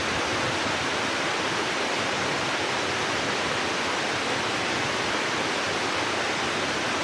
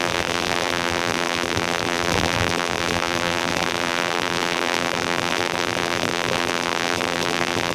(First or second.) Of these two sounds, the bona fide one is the first